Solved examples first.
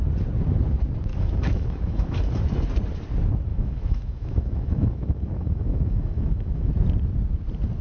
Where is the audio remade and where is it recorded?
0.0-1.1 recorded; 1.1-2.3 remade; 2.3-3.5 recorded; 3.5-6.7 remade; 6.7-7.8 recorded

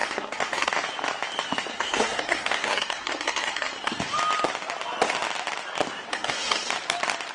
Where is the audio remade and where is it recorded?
0.0-0.7 remade; 0.7-1.7 recorded; 1.7-4.0 remade; 4.0-6.1 recorded; 6.1-6.7 remade; 6.7-7.3 recorded

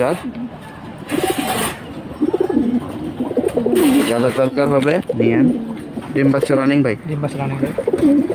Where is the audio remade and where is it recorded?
0.0-3.8 recorded; 3.8-5.0 remade; 5.0-6.3 recorded; 6.3-6.8 remade; 6.8-8.3 recorded

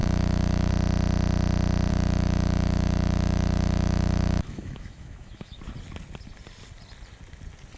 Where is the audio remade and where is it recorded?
0.0-0.7 remade; 0.7-1.9 recorded; 1.9-5.6 remade; 5.6-7.8 recorded